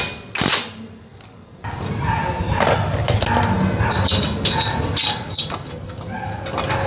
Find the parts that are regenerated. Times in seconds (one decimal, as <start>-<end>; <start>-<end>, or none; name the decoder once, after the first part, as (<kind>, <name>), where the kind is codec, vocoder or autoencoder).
none